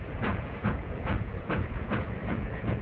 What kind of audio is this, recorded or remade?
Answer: remade